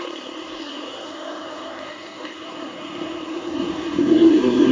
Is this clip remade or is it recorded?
remade